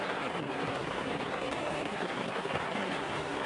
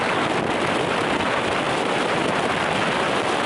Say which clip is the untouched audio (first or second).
second